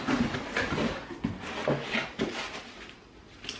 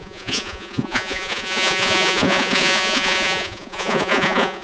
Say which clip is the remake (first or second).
second